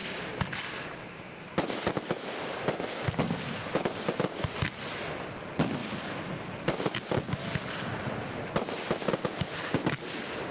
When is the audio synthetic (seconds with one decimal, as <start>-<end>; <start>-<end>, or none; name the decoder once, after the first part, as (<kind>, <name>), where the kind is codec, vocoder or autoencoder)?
none